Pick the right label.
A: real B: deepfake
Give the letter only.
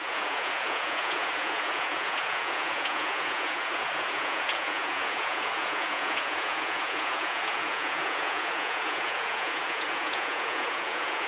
B